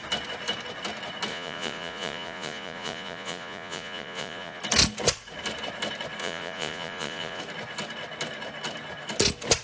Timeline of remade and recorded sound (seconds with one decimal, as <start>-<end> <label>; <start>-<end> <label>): 0.0-1.3 recorded; 1.3-4.6 remade; 4.6-6.2 recorded; 6.2-7.4 remade; 7.4-9.6 recorded